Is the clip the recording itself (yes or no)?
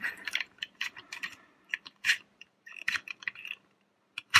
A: no